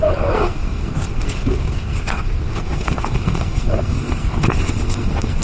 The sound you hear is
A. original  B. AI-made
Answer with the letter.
B